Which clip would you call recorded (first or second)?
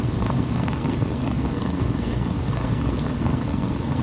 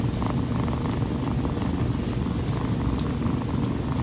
second